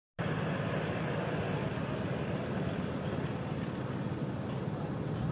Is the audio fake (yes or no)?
no